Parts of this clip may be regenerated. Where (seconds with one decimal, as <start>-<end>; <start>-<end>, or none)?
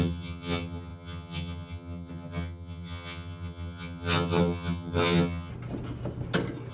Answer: 0.0-5.5